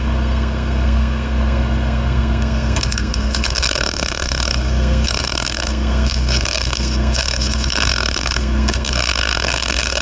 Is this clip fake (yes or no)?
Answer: yes